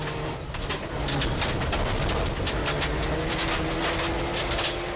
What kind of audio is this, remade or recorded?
recorded